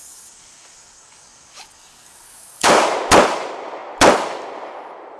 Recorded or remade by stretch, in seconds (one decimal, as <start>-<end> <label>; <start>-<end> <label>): 0.0-2.8 remade; 2.8-5.2 recorded